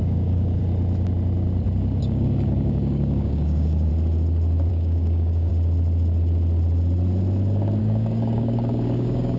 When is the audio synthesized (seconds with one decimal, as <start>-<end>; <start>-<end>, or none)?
0.0-0.6; 2.0-3.9; 4.7-5.5; 7.8-9.4